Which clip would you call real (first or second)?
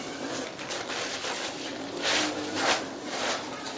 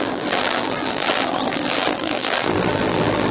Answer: first